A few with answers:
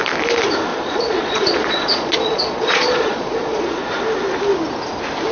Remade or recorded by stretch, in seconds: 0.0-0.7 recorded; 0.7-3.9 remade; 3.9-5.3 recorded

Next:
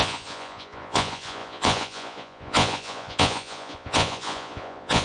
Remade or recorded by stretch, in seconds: 0.0-5.0 remade

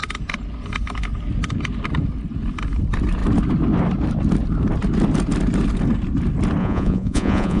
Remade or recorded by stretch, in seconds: 0.0-6.6 recorded; 6.6-7.6 remade